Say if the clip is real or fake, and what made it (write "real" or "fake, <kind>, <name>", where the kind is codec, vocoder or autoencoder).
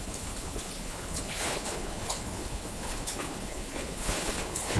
fake, codec, HILCodec